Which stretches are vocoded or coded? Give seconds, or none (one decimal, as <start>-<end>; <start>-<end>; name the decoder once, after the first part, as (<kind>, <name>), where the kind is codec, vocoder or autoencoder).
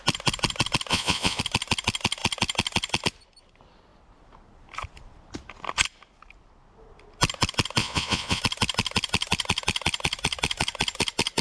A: 0.9-1.4 (vocoder, Vocos); 7.8-8.4